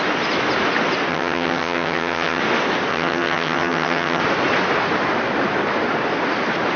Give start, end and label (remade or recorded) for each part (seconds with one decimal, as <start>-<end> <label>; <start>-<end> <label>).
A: 0.0-1.1 recorded; 1.1-2.4 remade; 2.4-2.9 recorded; 2.9-4.2 remade; 4.2-6.8 recorded